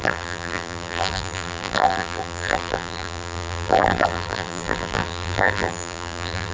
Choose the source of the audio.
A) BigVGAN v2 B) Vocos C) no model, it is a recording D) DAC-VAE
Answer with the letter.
A